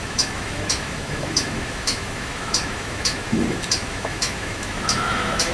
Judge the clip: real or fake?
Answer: fake